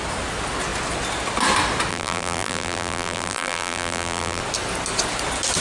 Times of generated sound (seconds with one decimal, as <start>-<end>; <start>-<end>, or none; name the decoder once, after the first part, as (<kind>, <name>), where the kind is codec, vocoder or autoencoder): 1.9-4.4 (vocoder, BigVGAN v2)